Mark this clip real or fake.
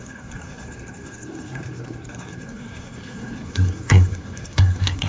fake